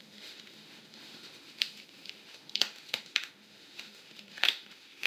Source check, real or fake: fake